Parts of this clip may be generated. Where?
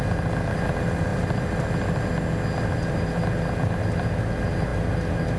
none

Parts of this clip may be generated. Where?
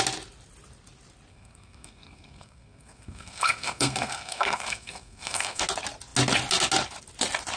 1.3-5.6